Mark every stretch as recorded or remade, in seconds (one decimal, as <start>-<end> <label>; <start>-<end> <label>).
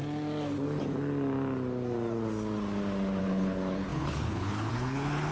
0.0-3.2 recorded; 3.2-5.3 remade